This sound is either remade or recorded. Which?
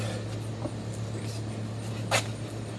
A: recorded